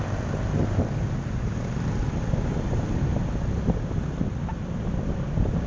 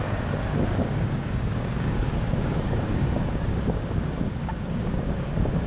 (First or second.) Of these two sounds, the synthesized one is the second